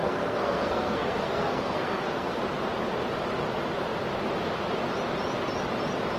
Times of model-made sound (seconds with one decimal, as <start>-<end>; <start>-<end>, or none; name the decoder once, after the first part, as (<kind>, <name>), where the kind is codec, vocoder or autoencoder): 0.0-2.4 (codec, SNAC)